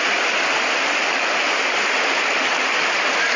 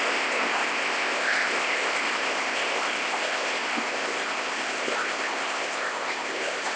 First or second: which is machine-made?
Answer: second